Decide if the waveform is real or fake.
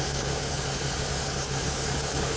fake